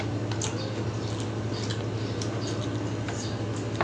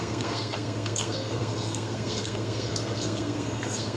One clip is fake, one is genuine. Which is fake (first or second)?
second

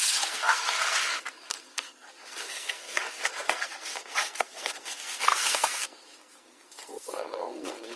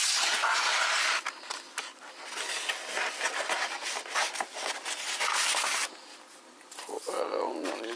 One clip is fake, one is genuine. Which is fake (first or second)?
first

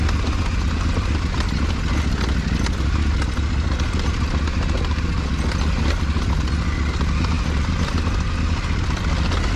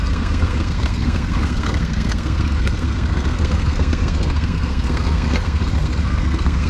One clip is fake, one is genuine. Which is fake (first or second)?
second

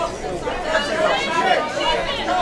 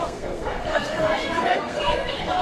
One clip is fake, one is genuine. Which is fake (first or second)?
second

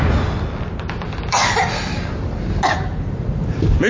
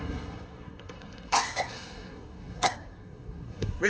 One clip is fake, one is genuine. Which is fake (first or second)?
second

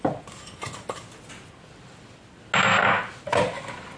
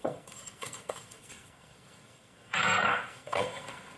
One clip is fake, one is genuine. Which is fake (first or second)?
second